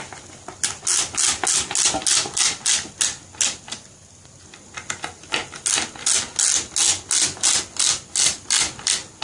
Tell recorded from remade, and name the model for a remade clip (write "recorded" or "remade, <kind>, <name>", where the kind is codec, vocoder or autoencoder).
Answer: recorded